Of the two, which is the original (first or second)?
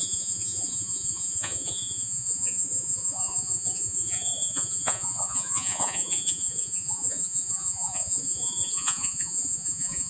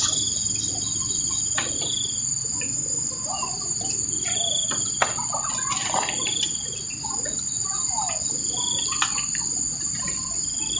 second